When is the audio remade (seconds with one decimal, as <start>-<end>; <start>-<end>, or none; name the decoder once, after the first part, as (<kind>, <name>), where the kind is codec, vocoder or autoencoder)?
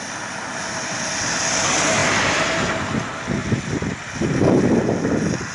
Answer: 2.0-3.0 (vocoder, BigVGAN v2); 3.4-5.0